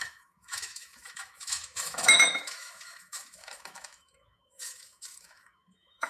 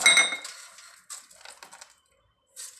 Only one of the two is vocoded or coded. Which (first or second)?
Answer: first